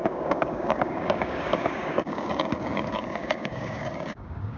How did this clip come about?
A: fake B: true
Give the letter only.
A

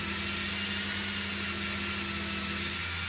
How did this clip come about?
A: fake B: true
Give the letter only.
B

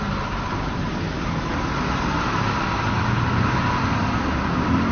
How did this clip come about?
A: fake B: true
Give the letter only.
B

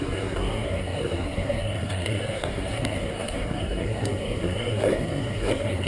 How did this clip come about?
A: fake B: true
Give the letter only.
A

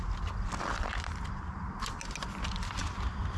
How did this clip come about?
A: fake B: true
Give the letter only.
B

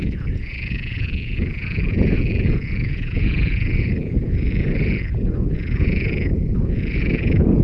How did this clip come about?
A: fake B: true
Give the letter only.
A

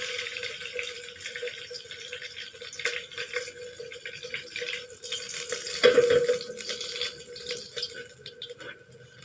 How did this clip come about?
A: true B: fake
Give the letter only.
A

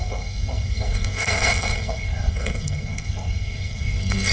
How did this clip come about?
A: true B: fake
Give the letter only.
B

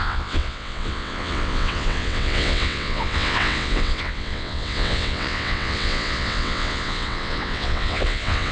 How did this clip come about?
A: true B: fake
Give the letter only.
B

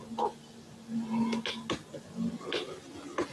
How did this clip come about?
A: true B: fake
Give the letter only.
A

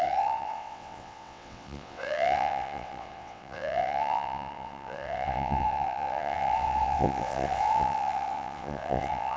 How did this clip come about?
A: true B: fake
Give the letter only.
B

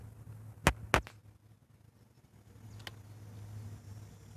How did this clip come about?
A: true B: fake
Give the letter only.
A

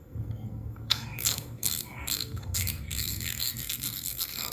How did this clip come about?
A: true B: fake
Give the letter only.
B